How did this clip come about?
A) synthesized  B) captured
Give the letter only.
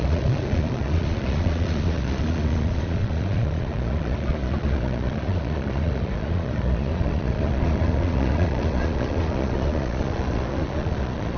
A